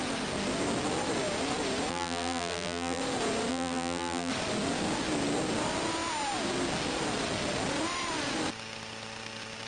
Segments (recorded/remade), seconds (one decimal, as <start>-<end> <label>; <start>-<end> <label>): 0.0-1.9 recorded; 1.9-3.0 remade; 3.0-3.5 recorded; 3.5-4.3 remade; 4.3-9.7 recorded

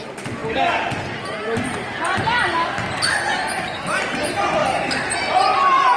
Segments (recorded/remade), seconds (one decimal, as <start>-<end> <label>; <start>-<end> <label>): 0.0-6.0 recorded